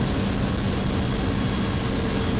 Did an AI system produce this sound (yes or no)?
no